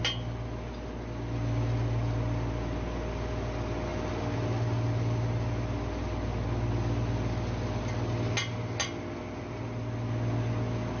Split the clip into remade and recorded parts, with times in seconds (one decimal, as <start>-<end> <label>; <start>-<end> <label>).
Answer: 0.0-11.0 recorded